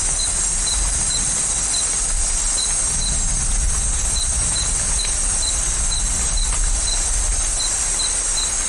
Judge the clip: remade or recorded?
recorded